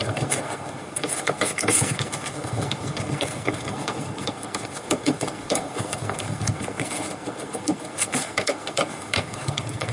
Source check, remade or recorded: remade